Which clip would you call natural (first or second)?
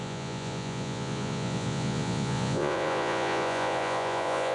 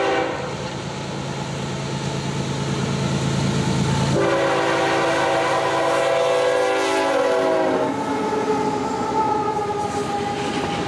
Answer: second